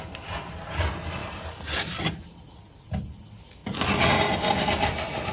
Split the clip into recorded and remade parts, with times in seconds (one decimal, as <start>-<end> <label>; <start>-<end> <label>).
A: 0.0-5.3 recorded